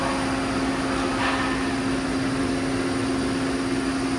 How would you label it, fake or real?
real